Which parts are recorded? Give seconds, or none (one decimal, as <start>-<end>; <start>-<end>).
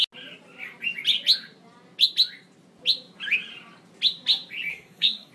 0.0-4.7